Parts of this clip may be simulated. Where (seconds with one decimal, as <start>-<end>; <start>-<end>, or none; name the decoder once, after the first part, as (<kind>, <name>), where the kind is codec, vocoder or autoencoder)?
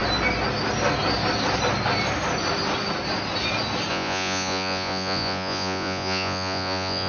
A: 3.9-7.1 (vocoder, Vocos)